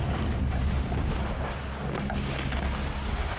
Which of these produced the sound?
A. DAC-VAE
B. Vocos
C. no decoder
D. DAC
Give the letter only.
C